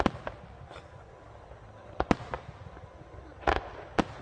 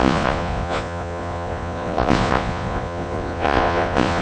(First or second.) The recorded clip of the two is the first